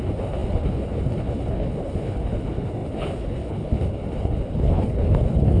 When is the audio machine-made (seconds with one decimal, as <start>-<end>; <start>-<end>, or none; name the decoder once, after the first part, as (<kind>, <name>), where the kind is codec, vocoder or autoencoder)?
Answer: 0.0-5.6 (codec, HILCodec)